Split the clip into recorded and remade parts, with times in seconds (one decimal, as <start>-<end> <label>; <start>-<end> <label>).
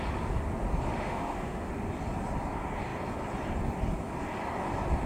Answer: 0.0-0.9 recorded; 0.9-1.7 remade; 1.7-5.1 recorded